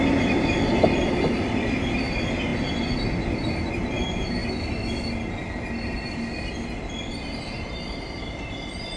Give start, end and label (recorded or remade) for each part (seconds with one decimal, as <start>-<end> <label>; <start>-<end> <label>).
0.0-9.0 recorded